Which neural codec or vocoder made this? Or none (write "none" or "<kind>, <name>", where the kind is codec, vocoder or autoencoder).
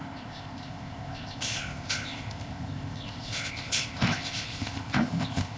codec, ZipCodec